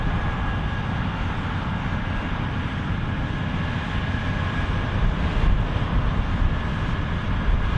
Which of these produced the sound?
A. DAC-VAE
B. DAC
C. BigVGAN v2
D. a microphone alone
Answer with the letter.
D